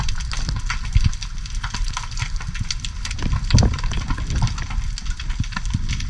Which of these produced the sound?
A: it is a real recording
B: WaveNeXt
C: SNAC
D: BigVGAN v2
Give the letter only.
A